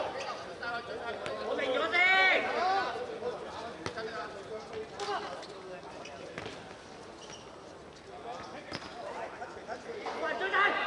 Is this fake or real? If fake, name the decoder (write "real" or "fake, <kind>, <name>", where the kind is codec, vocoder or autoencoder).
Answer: real